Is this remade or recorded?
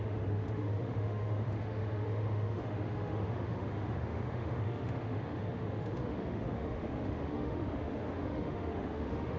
remade